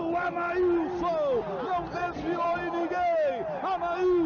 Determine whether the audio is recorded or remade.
recorded